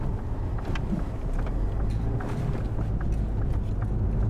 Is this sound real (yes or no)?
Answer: yes